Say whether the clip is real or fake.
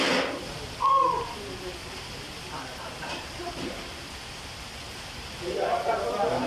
fake